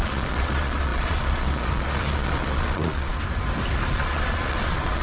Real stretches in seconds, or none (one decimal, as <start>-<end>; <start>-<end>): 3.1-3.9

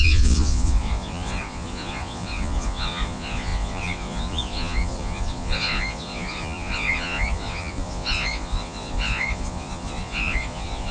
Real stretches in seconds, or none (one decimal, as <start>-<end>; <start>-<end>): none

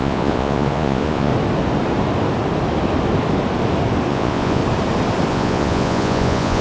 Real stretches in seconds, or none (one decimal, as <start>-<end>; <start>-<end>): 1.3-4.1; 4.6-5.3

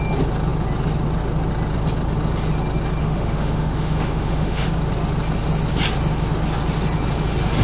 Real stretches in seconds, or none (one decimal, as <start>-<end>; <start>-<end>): 0.0-3.0; 4.7-7.6

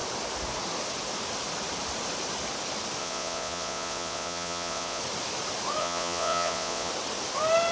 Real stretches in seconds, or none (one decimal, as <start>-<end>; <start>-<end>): 0.0-3.0; 5.0-5.8; 6.9-7.7

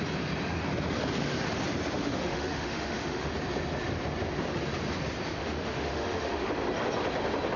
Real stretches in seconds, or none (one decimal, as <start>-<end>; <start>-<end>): 0.0-2.0; 3.3-5.4; 6.5-7.6

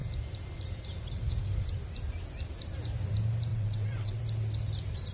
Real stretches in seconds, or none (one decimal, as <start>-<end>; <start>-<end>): 0.0-3.5; 4.2-5.1